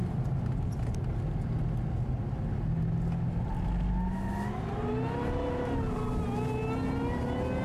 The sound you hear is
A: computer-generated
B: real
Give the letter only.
B